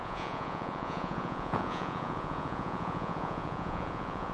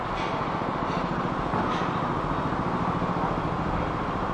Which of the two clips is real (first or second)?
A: second